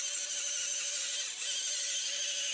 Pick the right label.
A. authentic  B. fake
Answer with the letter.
A